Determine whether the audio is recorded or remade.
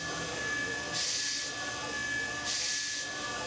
recorded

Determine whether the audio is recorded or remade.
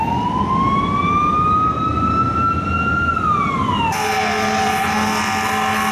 recorded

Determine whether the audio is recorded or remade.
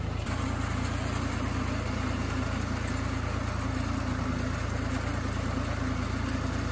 recorded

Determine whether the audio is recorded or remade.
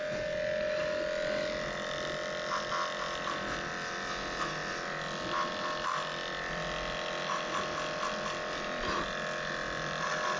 recorded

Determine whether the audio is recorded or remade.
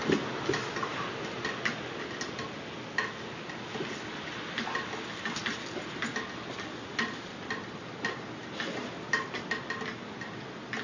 recorded